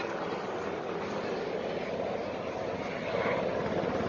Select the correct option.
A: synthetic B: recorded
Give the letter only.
B